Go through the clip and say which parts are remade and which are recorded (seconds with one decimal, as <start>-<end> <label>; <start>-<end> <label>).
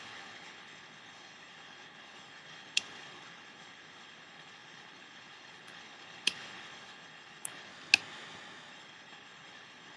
0.0-7.7 remade; 7.7-8.7 recorded; 8.7-10.0 remade